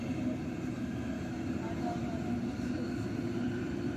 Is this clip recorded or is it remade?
recorded